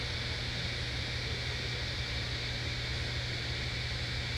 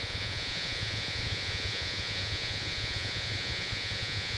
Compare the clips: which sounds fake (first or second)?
second